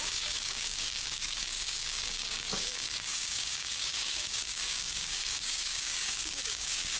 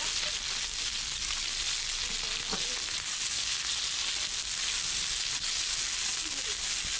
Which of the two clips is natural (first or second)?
second